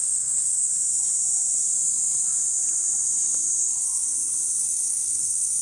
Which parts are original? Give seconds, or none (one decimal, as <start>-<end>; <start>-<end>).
0.7-3.6; 4.1-4.6